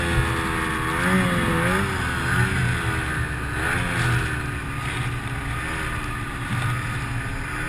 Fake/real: real